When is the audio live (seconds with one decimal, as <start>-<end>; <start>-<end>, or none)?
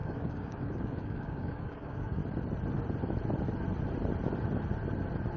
2.2-5.4